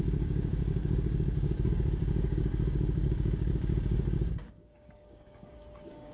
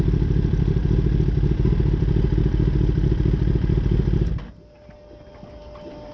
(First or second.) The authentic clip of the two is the second